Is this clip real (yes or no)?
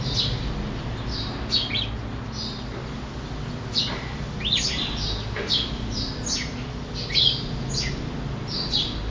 yes